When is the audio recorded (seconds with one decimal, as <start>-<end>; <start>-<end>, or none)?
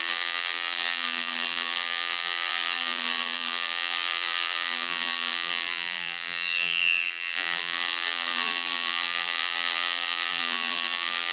none